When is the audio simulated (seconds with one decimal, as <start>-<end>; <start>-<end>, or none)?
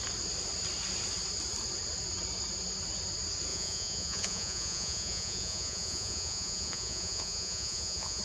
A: 3.5-8.2